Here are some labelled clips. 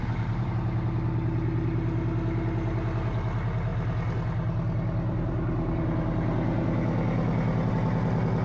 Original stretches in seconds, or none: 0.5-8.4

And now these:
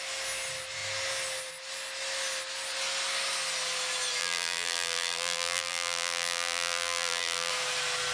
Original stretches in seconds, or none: 0.0-4.2; 7.5-8.1